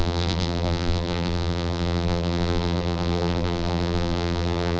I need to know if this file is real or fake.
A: fake